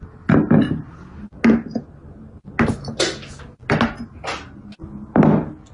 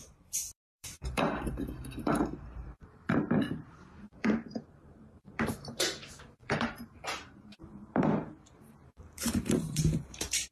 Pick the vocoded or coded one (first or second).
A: second